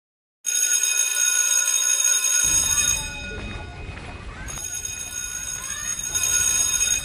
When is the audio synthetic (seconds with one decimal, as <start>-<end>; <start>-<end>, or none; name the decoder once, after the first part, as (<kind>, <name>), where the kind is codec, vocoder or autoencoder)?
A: 1.1-2.4 (vocoder, BigVGAN v2); 3.7-5.0; 5.9-7.0

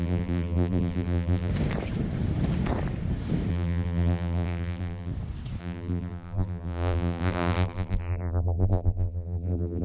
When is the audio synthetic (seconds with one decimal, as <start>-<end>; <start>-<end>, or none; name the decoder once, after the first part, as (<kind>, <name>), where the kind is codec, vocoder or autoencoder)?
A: 0.0-1.5 (vocoder, BigVGAN v2); 3.5-5.1; 5.6-9.8

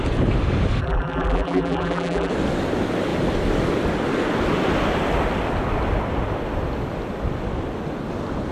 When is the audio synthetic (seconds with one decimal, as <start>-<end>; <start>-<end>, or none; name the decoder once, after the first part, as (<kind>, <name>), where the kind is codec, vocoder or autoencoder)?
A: 0.8-2.3 (vocoder, BigVGAN v2)

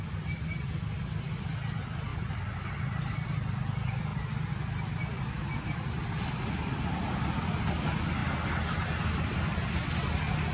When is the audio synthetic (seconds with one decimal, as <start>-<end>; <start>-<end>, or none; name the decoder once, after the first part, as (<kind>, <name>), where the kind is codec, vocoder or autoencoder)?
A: 2.1-2.7 (vocoder, BigVGAN v2); 4.1-5.6

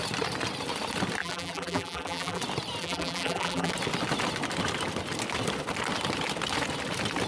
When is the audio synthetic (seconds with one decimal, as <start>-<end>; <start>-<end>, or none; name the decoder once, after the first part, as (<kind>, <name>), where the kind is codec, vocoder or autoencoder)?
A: 1.2-2.4 (vocoder, BigVGAN v2); 2.8-3.7

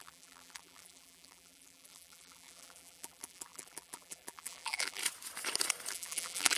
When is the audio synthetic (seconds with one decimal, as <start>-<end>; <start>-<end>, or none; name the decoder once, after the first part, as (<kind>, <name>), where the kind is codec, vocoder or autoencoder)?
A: 0.0-5.0 (vocoder, BigVGAN v2); 5.9-6.6

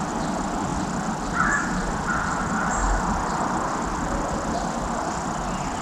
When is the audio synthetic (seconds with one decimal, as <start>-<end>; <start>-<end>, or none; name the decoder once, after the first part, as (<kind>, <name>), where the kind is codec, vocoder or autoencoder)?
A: none